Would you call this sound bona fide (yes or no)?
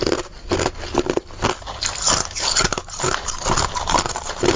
yes